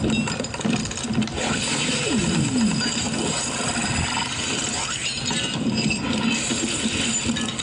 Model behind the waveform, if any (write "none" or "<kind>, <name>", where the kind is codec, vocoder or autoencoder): none